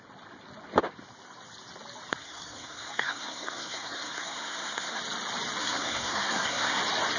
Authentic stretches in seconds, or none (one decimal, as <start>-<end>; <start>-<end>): 0.0-2.2; 5.0-5.6; 6.8-7.2